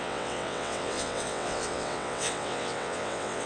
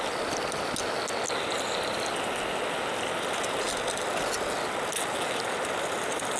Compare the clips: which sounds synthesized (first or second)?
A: first